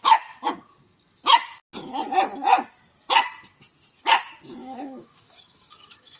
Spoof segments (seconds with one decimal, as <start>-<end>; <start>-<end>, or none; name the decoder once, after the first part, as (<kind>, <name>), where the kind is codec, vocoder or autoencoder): 4.6-6.2 (autoencoder, DAC-VAE)